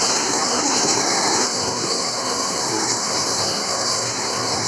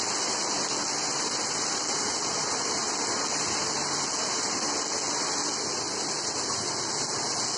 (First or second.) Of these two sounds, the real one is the second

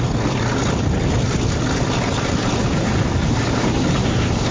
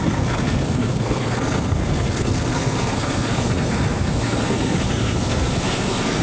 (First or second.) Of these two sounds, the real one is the first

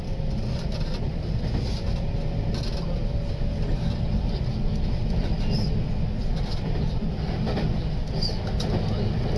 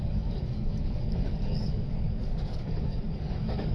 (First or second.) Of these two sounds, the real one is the first